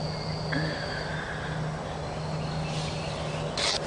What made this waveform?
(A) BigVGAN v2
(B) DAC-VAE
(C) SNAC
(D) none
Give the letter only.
D